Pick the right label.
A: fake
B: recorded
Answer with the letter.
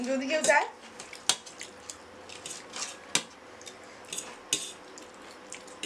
B